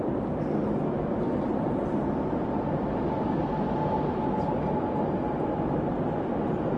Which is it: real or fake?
real